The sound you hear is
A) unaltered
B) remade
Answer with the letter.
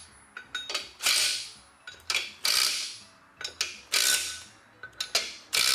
A